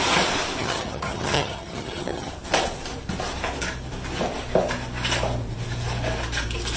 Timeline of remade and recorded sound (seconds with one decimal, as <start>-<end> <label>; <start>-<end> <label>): 0.0-0.6 recorded; 0.6-2.3 remade; 2.3-6.8 recorded